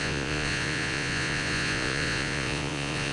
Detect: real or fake fake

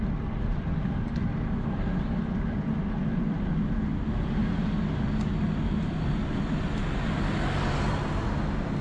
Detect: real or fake real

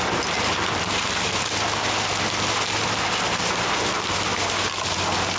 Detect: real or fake real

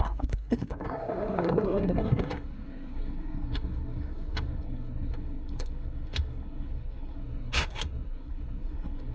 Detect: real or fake fake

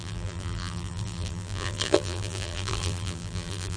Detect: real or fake fake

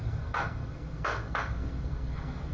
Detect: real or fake fake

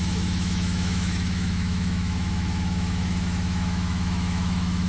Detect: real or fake fake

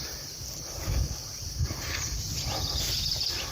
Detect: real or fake fake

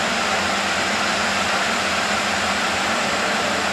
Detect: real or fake real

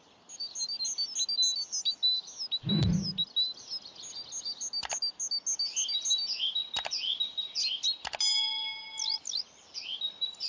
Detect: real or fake real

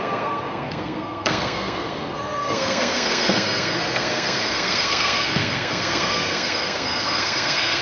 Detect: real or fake fake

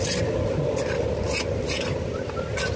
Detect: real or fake real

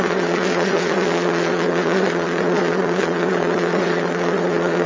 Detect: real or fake fake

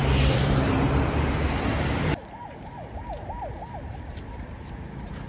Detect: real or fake fake